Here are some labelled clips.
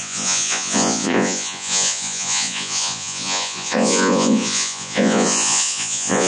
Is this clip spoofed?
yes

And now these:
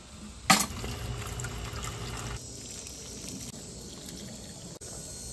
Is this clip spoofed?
no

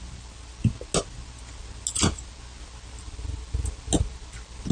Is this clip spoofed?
no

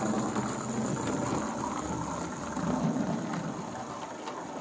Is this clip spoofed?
no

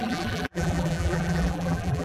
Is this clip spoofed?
yes